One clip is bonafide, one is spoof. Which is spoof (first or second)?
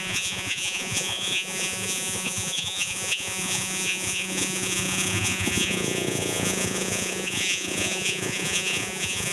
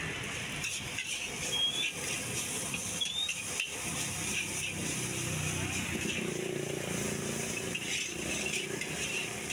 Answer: first